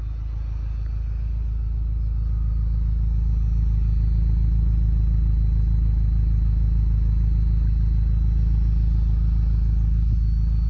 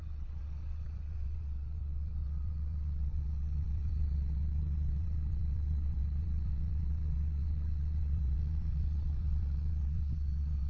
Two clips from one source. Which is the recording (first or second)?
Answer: first